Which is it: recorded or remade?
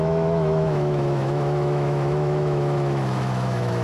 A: remade